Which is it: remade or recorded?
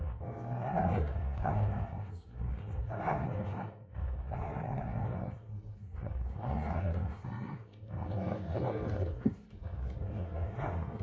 remade